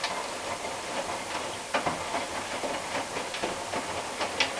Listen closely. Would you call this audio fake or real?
real